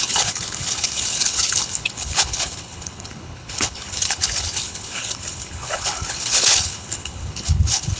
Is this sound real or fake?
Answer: fake